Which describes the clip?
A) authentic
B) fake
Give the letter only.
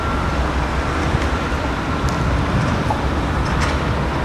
A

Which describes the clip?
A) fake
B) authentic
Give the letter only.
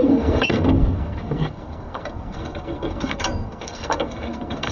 A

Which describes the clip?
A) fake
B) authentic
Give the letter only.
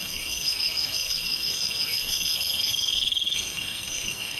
A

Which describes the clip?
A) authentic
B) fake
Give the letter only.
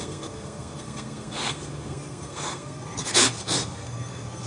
B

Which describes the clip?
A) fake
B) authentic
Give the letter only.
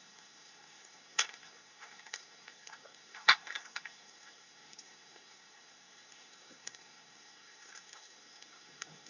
A